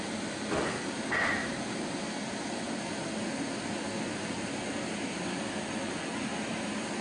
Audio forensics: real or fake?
real